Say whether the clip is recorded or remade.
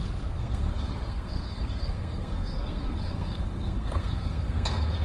remade